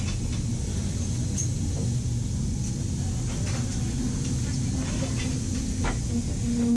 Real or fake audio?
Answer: real